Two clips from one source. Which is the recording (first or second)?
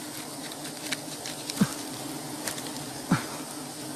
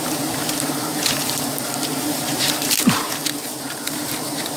first